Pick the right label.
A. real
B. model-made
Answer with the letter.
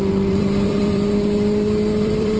B